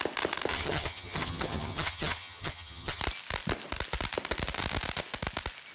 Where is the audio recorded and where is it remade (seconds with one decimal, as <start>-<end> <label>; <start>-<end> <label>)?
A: 0.0-0.5 recorded; 0.5-3.0 remade; 3.0-5.7 recorded